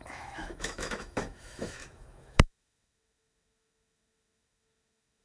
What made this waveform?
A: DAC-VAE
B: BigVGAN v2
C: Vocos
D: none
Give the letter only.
A